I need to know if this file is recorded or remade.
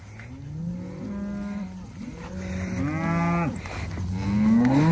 recorded